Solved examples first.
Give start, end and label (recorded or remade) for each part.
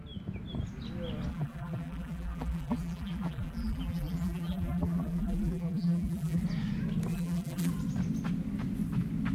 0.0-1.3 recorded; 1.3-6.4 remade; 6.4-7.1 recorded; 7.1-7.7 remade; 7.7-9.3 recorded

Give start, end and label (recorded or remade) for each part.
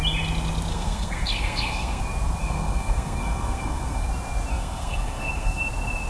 0.0-0.7 recorded; 0.7-2.0 remade; 2.0-2.4 recorded; 2.4-4.1 remade; 4.1-4.5 recorded; 4.5-5.6 remade; 5.6-6.1 recorded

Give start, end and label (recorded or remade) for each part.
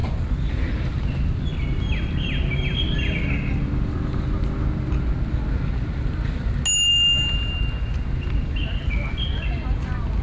0.0-10.2 recorded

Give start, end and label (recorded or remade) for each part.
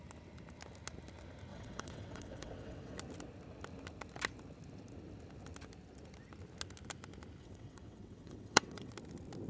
0.0-1.5 recorded; 1.5-3.0 remade; 3.0-7.4 recorded; 7.4-8.9 remade; 8.9-9.5 recorded